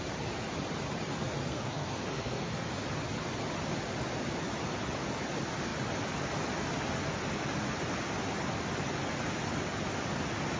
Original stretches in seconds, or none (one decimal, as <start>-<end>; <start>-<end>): 0.0-1.5; 2.7-10.6